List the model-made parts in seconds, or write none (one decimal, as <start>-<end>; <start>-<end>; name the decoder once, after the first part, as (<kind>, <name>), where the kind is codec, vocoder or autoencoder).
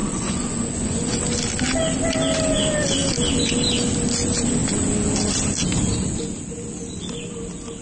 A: 0.0-1.2 (vocoder, Vocos)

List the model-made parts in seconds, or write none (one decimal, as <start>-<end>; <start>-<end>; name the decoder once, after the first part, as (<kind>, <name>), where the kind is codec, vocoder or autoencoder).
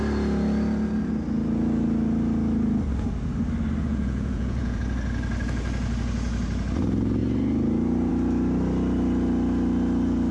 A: 3.9-4.8 (vocoder, Vocos)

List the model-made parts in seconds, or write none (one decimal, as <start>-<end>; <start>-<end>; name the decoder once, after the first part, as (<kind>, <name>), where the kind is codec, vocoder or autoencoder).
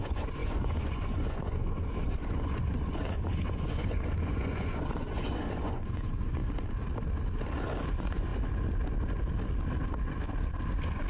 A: 0.0-6.4 (vocoder, Vocos); 7.9-8.3